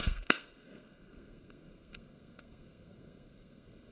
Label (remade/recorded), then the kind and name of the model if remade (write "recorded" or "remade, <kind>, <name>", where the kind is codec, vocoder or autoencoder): remade, codec, SNAC